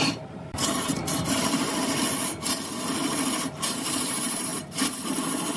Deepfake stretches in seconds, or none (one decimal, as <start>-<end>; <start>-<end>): 0.0-1.0; 3.5-4.5